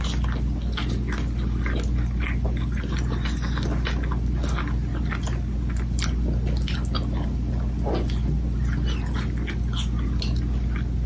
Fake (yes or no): no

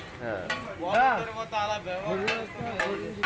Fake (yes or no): no